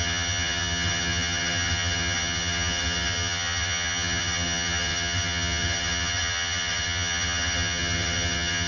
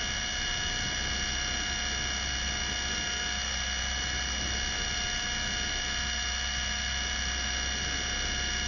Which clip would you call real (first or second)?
second